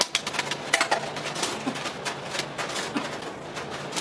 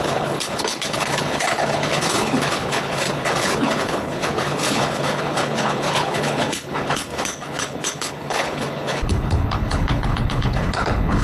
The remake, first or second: second